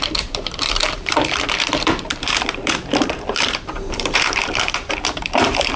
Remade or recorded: remade